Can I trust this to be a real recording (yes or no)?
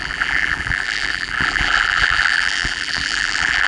no